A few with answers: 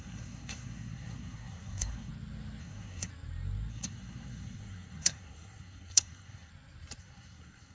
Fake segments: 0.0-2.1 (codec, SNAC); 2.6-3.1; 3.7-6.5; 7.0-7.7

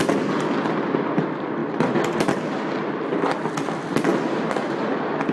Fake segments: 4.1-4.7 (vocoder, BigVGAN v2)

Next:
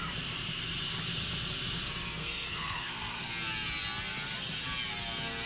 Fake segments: 2.2-3.3 (codec, SNAC)